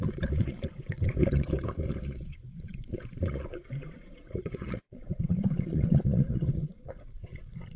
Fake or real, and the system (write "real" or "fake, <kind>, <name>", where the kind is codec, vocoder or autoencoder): fake, vocoder, Vocos